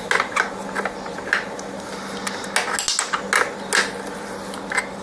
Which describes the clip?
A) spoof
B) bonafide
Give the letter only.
B